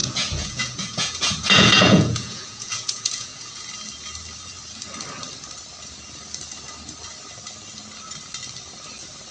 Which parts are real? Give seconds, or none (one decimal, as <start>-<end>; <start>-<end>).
3.6-9.3